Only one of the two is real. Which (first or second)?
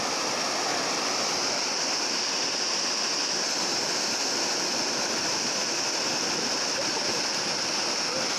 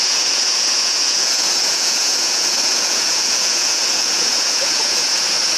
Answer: first